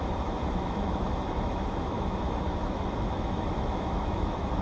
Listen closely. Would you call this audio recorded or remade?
remade